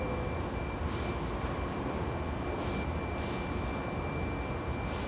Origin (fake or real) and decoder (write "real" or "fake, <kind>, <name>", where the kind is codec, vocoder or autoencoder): real